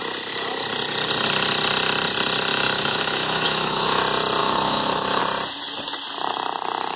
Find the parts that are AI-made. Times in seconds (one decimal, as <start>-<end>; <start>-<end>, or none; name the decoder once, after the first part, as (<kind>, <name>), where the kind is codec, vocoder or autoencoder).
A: 2.5-4.0 (autoencoder, DAC-VAE); 4.4-5.2